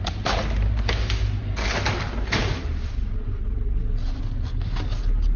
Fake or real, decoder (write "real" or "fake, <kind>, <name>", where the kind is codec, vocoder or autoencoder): real